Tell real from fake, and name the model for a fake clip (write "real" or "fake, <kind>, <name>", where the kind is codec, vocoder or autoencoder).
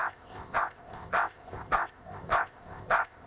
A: fake, codec, ZipCodec